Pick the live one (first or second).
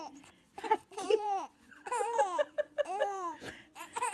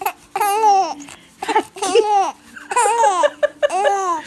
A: second